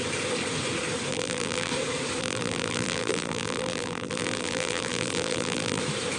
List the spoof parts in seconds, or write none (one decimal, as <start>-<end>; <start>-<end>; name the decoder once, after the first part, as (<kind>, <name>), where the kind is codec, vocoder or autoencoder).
1.1-1.7 (vocoder, BigVGAN v2); 2.2-5.8